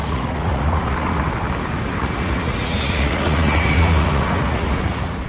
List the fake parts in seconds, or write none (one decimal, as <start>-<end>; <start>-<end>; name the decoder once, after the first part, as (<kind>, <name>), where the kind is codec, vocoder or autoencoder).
0.0-1.3 (vocoder, Vocos); 2.0-5.3